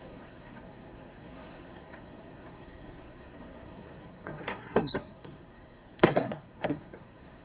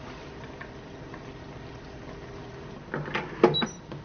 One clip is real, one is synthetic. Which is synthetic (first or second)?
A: first